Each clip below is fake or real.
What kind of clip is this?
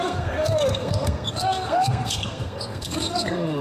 fake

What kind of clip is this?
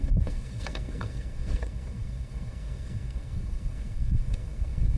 fake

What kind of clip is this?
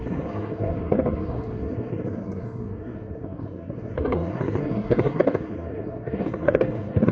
fake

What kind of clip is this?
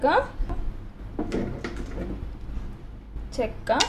real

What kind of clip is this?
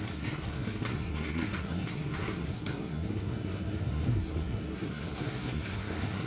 fake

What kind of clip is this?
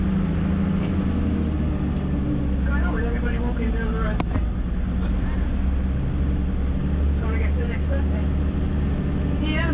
real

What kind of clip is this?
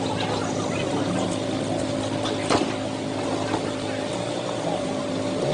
real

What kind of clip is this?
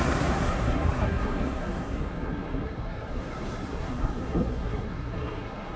fake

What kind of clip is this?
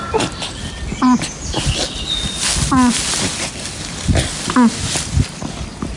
real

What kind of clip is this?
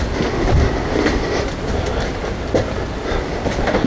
real